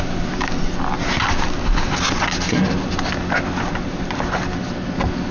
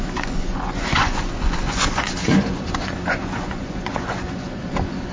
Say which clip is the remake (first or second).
second